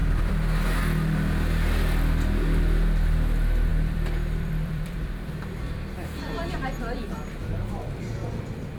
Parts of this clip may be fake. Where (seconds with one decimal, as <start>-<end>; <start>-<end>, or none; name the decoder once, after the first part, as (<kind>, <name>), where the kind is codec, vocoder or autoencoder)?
0.0-0.8 (vocoder, BigVGAN v2); 3.7-6.7; 7.4-8.8